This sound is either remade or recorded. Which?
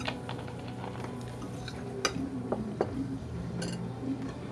recorded